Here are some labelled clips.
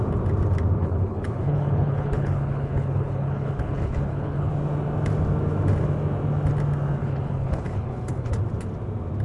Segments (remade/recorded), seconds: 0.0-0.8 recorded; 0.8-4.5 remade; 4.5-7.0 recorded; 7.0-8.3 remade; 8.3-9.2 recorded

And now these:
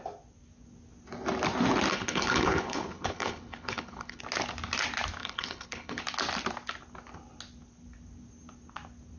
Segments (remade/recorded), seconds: 0.0-1.9 recorded; 1.9-4.2 remade; 4.2-5.2 recorded; 5.2-6.0 remade; 6.0-9.2 recorded

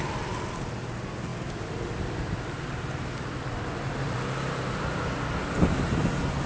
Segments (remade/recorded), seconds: 0.0-6.5 recorded

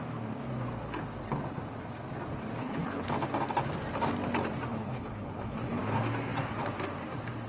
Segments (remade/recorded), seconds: 0.0-2.6 recorded; 2.6-3.1 remade; 3.1-4.7 recorded; 4.7-5.8 remade; 5.8-7.5 recorded